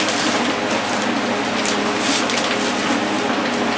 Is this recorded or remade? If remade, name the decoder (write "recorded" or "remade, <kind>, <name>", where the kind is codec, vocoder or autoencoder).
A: recorded